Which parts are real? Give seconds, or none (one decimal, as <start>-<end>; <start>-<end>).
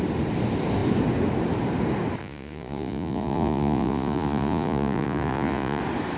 0.0-2.2; 5.8-6.2